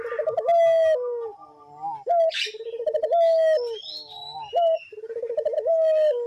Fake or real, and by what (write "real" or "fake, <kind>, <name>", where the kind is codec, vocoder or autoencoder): real